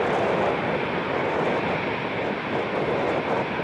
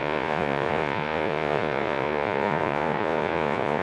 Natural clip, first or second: first